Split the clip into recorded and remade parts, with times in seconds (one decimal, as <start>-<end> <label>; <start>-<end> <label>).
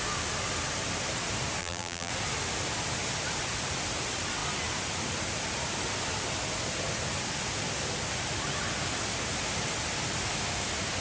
0.0-1.6 recorded; 1.6-2.1 remade; 2.1-11.0 recorded